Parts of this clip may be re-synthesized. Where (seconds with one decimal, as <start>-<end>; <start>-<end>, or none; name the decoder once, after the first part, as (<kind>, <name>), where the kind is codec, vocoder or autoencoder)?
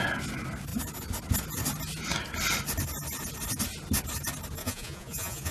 4.6-5.5 (vocoder, Vocos)